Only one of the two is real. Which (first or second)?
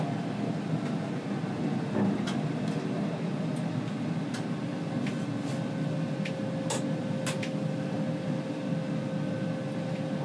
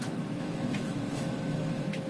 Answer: first